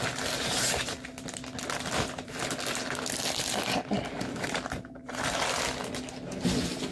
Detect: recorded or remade recorded